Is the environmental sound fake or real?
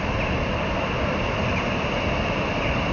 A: real